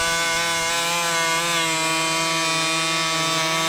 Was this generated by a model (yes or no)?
no